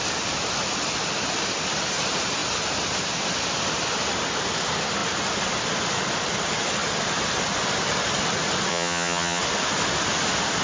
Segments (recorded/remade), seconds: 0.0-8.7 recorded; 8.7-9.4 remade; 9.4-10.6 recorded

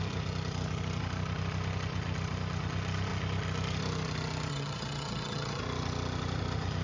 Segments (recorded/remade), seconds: 0.0-4.5 recorded; 4.5-5.6 remade; 5.6-6.8 recorded